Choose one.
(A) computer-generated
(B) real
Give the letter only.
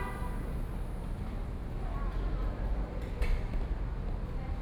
B